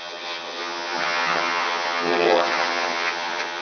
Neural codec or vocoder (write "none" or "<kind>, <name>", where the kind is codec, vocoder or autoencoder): vocoder, HiFi-GAN